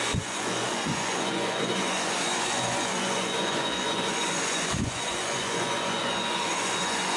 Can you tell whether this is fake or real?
fake